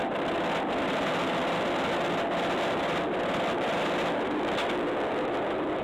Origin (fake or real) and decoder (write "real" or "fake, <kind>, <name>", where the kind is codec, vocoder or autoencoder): fake, vocoder, BigVGAN v2